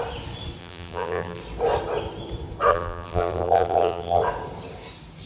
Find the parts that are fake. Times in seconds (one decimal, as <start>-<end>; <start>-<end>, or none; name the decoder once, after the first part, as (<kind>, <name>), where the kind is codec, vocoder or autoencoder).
0.6-1.4 (vocoder, BigVGAN v2); 2.7-4.2